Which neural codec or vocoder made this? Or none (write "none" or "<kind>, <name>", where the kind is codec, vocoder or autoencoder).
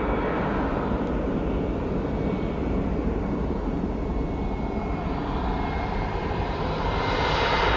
none